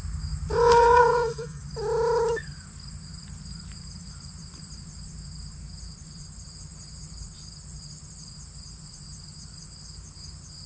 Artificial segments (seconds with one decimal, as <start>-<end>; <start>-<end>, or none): 0.6-1.6